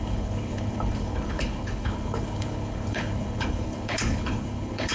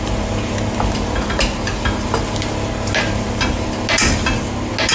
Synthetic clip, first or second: first